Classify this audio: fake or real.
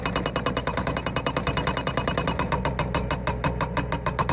real